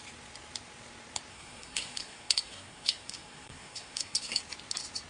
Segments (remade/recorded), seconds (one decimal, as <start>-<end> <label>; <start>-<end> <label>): 0.0-1.3 recorded; 1.3-4.4 remade; 4.4-5.1 recorded